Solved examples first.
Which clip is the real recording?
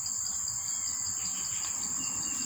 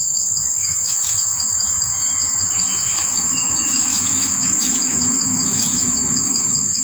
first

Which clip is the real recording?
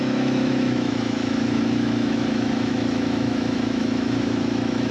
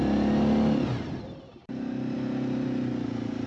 second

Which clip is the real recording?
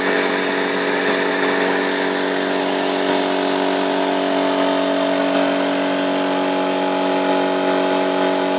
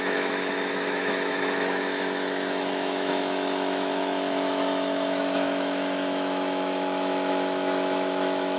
first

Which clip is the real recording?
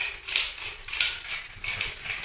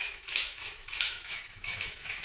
first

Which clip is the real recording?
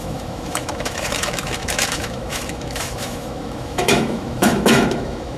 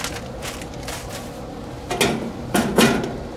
second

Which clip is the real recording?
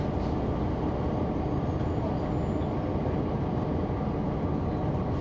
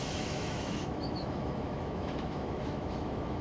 first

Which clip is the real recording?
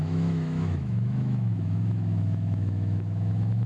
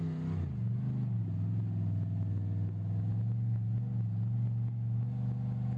second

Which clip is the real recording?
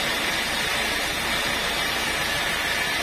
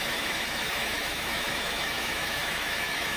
first